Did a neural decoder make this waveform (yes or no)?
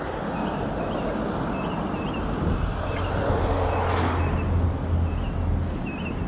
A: no